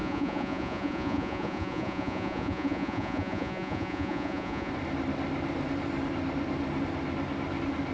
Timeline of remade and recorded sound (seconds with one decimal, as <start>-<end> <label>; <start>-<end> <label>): 0.0-4.7 remade; 4.7-7.9 recorded